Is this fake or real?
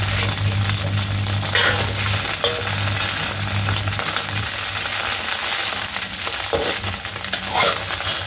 real